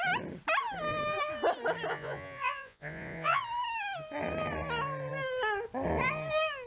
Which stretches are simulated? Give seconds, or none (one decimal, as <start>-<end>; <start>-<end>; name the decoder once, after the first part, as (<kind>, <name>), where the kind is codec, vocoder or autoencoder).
1.9-3.4 (vocoder, Vocos)